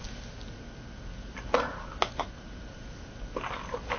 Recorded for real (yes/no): yes